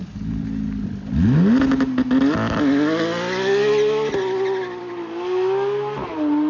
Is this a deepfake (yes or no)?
no